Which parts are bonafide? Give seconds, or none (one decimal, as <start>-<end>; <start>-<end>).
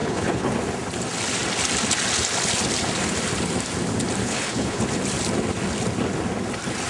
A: 0.5-4.2; 4.8-6.9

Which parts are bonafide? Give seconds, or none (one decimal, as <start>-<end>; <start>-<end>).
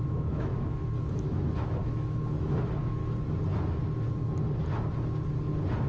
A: 3.0-5.9